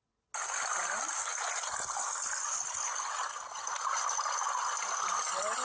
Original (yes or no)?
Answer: yes